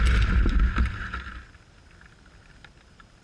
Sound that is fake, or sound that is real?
real